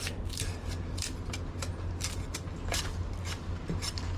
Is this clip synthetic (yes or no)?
no